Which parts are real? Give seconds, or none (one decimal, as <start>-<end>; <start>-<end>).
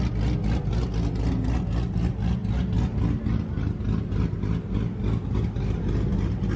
0.0-6.6